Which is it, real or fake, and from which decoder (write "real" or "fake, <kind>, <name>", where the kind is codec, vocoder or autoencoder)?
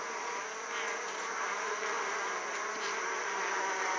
real